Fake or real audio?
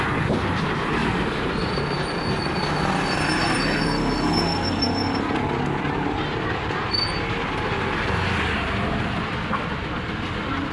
real